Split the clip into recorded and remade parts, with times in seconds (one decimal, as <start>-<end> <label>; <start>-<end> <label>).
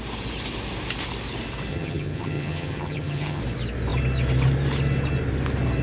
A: 0.0-1.7 recorded; 1.7-3.4 remade; 3.4-5.8 recorded